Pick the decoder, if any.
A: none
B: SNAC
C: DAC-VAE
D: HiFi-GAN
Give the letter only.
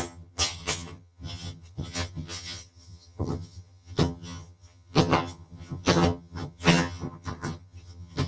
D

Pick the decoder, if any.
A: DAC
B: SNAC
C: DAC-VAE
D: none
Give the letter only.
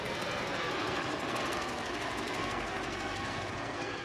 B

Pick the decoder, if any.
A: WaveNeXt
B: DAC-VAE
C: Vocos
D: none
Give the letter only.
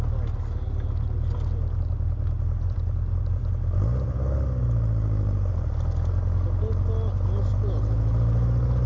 D